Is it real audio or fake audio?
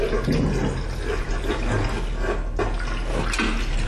real